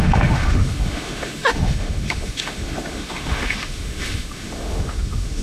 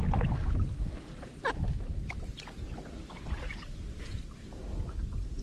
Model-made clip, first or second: first